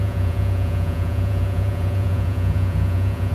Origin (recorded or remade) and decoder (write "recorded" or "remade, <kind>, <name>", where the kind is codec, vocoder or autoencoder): remade, vocoder, Vocos